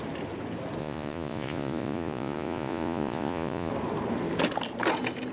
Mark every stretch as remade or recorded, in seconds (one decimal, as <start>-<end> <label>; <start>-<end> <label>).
0.0-0.8 recorded; 0.8-3.7 remade; 3.7-5.3 recorded